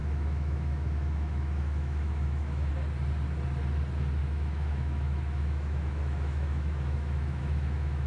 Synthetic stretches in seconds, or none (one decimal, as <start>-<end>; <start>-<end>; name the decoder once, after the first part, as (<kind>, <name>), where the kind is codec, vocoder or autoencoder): 0.0-2.7 (autoencoder, DAC-VAE); 4.2-8.1